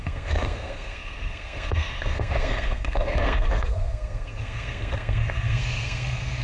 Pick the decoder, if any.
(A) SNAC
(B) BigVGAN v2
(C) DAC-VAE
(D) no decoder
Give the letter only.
A